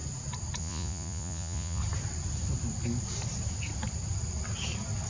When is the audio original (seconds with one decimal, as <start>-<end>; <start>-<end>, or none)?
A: 0.0-0.6; 1.8-5.1